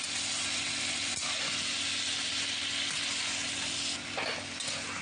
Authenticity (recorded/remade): recorded